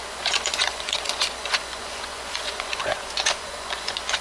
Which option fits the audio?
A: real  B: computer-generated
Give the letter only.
B